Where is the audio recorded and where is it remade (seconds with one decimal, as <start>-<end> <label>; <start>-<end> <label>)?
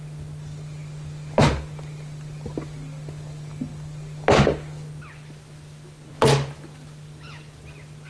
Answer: 0.0-8.1 recorded